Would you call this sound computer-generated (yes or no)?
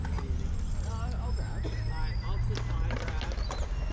no